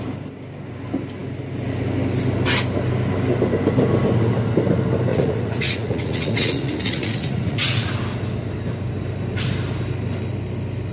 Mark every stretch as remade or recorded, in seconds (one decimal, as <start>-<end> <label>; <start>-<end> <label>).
0.0-5.1 recorded; 5.1-7.9 remade; 7.9-10.9 recorded